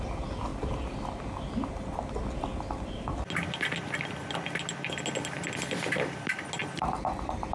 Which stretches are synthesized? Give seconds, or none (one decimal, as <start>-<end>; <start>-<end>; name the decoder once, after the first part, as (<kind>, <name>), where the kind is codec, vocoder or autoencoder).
none